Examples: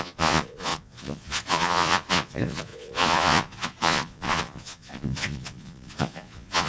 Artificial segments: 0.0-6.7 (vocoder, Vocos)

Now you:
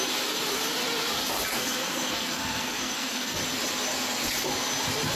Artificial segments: 1.5-3.4 (codec, SNAC)

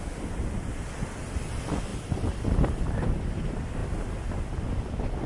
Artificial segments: 0.0-1.9 (vocoder, BigVGAN v2); 2.7-3.8; 4.7-5.3